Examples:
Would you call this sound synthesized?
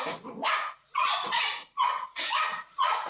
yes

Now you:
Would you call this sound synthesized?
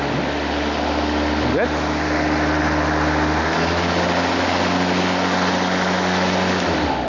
no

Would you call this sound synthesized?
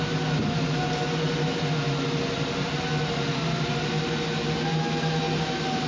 no